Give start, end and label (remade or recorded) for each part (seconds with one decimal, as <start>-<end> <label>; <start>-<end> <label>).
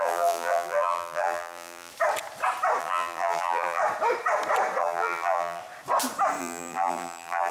0.0-1.9 remade; 1.9-2.8 recorded; 2.8-3.8 remade; 3.8-4.8 recorded; 4.8-5.6 remade; 5.6-6.4 recorded; 6.4-7.5 remade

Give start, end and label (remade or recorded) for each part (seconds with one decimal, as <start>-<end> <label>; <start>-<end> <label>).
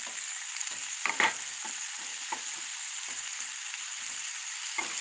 0.0-0.8 recorded; 0.8-1.3 remade; 1.3-2.1 recorded; 2.1-2.7 remade; 2.7-3.3 recorded; 3.3-4.3 remade; 4.3-5.0 recorded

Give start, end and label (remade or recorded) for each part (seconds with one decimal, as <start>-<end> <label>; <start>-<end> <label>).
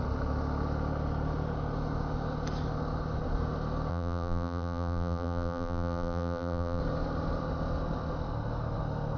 0.0-3.9 recorded; 3.9-6.8 remade; 6.8-9.2 recorded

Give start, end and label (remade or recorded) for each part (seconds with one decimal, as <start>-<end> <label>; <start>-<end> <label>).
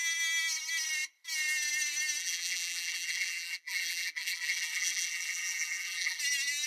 0.0-2.2 recorded; 2.2-6.2 remade; 6.2-6.7 recorded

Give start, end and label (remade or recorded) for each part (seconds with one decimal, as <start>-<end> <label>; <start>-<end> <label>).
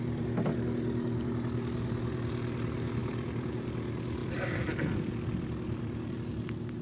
0.0-3.0 recorded; 3.0-3.5 remade; 3.5-4.2 recorded; 4.2-6.3 remade; 6.3-6.8 recorded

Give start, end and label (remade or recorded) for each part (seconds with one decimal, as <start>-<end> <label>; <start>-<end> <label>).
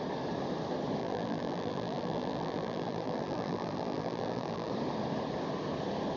0.0-1.0 recorded; 1.0-4.7 remade; 4.7-6.2 recorded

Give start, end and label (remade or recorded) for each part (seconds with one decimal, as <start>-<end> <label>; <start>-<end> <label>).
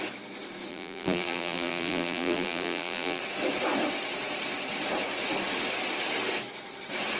0.0-0.7 recorded; 0.7-3.2 remade; 3.2-7.2 recorded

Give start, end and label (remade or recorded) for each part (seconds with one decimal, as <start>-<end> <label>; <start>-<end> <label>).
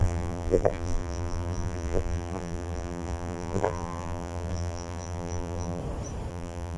0.0-5.8 remade; 5.8-6.3 recorded; 6.3-6.8 remade